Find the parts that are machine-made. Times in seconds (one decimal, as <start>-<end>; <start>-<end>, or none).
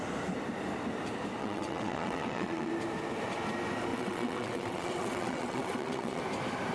1.4-2.7; 3.9-6.2